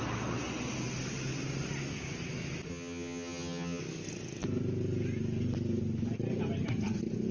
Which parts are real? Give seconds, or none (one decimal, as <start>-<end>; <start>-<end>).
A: 0.0-2.7; 3.8-7.3